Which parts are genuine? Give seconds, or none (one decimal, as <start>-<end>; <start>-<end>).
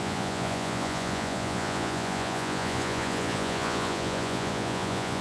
none